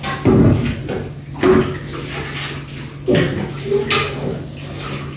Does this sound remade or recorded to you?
recorded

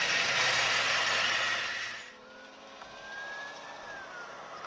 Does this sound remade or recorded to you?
recorded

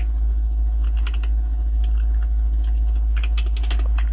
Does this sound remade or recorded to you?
recorded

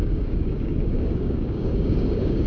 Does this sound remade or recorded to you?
remade